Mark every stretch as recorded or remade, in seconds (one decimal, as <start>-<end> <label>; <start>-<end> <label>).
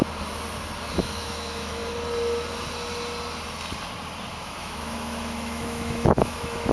0.0-0.9 recorded; 0.9-1.8 remade; 1.8-4.3 recorded; 4.3-6.7 remade